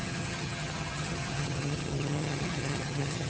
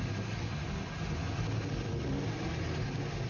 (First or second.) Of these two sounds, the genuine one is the second